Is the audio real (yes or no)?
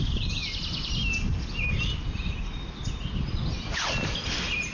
yes